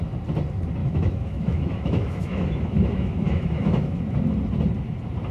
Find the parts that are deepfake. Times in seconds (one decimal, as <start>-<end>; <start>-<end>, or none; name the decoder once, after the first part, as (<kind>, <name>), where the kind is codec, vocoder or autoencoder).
0.8-4.0 (autoencoder, DAC-VAE)